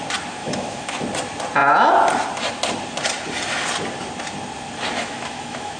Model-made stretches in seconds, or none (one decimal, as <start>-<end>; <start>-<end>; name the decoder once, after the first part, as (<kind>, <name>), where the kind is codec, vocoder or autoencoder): 0.4-1.0 (autoencoder, DAC-VAE); 4.9-5.8